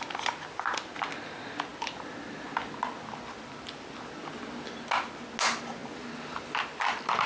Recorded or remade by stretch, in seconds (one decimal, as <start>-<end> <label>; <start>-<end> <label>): 0.0-7.3 recorded